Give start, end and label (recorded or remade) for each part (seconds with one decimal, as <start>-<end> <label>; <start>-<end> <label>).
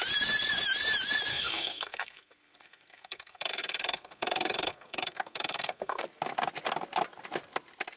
0.0-1.3 recorded; 1.3-6.0 remade; 6.0-8.0 recorded